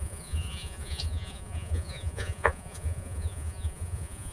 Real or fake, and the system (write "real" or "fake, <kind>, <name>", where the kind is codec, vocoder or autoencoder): fake, vocoder, Vocos